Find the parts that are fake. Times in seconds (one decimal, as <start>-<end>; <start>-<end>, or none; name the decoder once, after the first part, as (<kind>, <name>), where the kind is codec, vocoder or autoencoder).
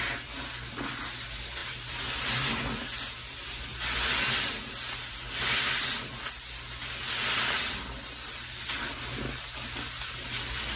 none